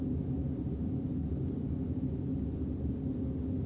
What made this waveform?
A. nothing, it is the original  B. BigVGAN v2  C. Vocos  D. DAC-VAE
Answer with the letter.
A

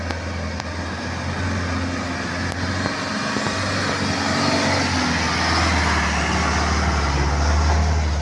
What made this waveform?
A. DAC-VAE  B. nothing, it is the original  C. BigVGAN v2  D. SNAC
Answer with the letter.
B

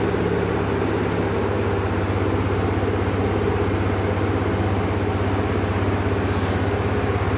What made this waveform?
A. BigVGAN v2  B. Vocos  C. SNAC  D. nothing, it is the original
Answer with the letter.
D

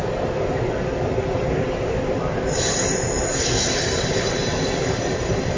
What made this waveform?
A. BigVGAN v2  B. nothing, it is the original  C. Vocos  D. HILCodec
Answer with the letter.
B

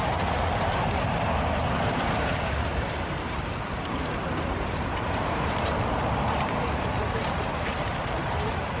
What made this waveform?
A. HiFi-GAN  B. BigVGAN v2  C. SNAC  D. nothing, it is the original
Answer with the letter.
B